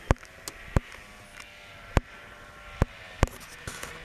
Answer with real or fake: real